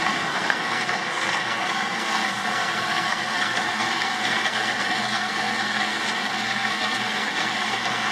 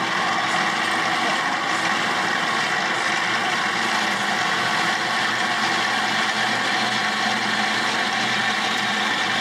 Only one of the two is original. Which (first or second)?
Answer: second